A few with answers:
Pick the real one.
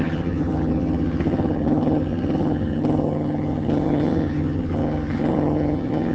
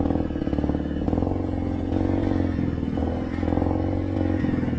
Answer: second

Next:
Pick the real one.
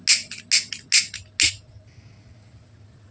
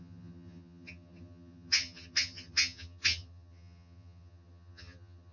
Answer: first